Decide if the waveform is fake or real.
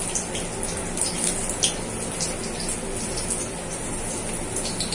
real